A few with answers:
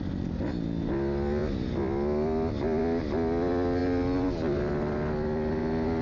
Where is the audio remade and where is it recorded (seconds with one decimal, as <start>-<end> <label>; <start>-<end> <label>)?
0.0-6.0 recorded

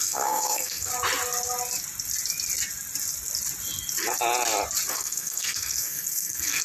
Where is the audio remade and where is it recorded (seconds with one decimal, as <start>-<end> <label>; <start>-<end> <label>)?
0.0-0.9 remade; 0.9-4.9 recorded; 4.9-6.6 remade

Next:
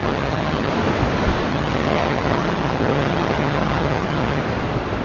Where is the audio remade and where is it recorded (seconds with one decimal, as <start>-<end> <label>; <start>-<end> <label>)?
0.0-0.7 remade; 0.7-1.5 recorded; 1.5-4.4 remade; 4.4-5.0 recorded